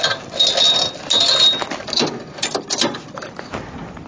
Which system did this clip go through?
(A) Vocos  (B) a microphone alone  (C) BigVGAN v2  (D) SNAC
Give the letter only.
B